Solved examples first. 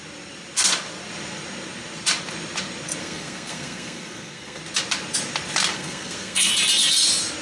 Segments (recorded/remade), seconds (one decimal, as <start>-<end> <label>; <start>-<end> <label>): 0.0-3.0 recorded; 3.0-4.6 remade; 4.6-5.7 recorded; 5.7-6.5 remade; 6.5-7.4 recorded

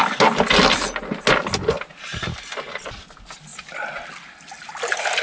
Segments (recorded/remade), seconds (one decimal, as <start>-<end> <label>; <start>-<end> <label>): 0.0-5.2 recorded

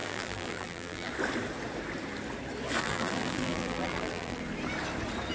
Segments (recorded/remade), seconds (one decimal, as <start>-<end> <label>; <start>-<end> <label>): 0.0-1.1 remade; 1.1-2.8 recorded; 2.8-4.4 remade; 4.4-5.3 recorded

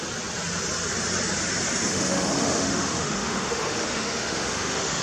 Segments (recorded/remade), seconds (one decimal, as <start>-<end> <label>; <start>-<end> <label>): 0.0-1.9 recorded; 1.9-5.0 remade

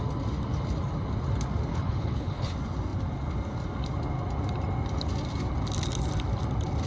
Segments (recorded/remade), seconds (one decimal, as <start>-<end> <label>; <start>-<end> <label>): 0.0-1.7 recorded; 1.7-2.5 remade; 2.5-6.9 recorded

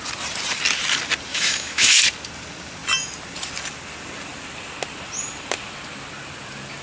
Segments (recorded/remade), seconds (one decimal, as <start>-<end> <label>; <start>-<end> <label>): 0.0-1.3 recorded; 1.3-2.0 remade; 2.0-6.8 recorded